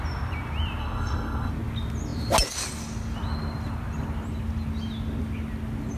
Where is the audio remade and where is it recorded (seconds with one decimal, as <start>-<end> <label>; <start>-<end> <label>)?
0.0-0.8 recorded; 0.8-1.5 remade; 1.5-6.0 recorded

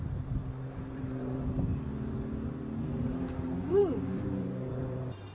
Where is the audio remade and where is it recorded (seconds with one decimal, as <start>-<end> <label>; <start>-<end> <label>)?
0.0-1.7 remade; 1.7-2.9 recorded; 2.9-5.3 remade

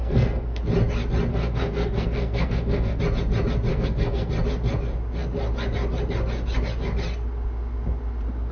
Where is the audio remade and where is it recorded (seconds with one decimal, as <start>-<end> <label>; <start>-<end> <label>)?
0.0-0.6 remade; 0.6-1.3 recorded; 1.3-3.0 remade; 3.0-3.7 recorded; 3.7-4.3 remade; 4.3-8.5 recorded